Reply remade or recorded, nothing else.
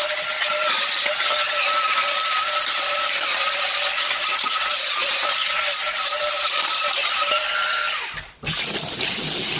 recorded